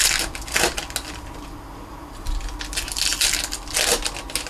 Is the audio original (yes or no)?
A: yes